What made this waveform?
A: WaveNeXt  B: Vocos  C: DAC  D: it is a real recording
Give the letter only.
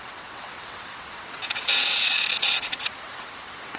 A